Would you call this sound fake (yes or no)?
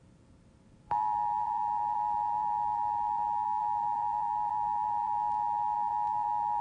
yes